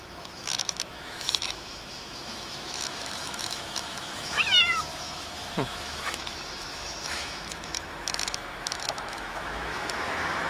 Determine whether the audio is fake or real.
fake